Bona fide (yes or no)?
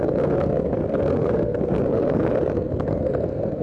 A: no